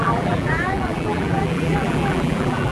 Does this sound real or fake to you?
fake